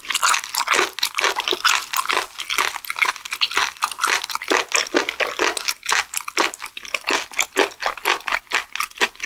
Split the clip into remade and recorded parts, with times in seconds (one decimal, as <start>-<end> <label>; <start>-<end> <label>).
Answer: 0.0-9.3 recorded